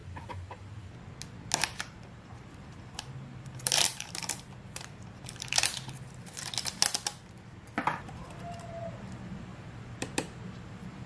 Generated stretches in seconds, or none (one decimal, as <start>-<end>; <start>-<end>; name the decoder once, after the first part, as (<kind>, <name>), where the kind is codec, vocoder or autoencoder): 1.8-5.7 (vocoder, BigVGAN v2); 7.8-11.1

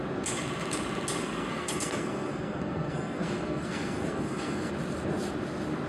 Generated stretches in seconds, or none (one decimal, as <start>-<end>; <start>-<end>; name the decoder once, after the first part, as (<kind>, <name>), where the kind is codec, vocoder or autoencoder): 1.2-4.7 (codec, SNAC)

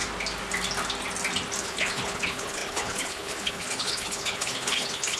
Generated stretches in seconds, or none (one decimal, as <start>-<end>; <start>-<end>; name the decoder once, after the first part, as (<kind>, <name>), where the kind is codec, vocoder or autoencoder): 1.6-5.2 (codec, HILCodec)

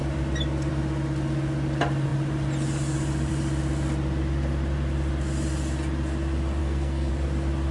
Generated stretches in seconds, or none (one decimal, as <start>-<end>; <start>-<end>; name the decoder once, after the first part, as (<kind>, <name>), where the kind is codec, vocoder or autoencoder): 6.6-7.1 (codec, SNAC)